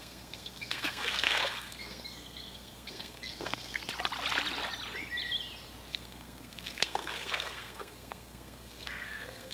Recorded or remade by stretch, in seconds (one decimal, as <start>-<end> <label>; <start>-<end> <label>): 0.0-3.8 remade; 3.8-5.9 recorded; 5.9-9.5 remade